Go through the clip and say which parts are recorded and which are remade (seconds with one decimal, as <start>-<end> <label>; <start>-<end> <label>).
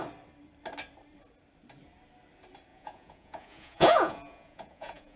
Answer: 0.0-2.7 recorded; 2.7-5.2 remade